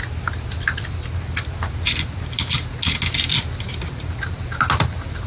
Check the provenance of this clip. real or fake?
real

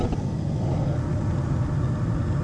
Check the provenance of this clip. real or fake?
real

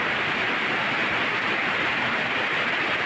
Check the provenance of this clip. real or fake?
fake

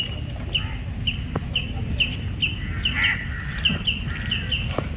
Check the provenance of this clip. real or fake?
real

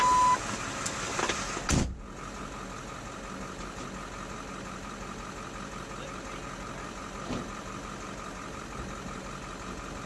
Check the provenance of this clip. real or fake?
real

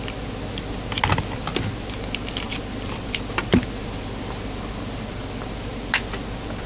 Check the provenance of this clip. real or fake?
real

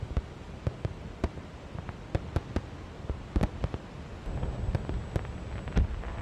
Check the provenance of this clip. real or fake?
real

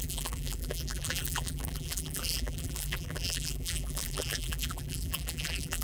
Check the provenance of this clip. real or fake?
fake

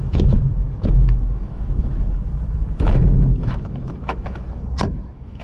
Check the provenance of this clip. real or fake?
fake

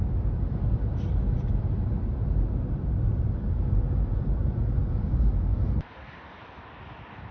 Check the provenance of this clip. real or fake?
real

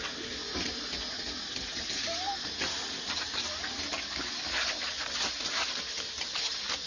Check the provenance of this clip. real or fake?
real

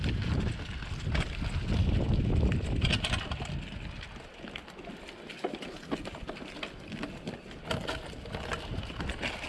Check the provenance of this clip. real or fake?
real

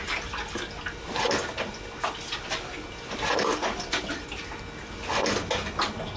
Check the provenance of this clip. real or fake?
real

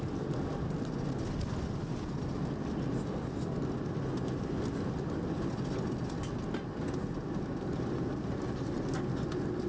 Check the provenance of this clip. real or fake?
real